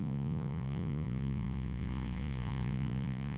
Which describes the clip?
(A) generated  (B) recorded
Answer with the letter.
A